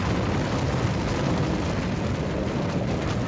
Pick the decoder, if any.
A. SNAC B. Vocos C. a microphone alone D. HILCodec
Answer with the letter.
C